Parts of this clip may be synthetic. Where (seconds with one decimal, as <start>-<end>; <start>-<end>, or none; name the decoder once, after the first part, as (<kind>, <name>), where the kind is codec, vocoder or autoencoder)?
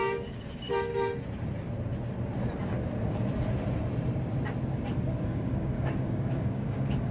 0.0-0.9 (codec, DAC); 5.2-7.1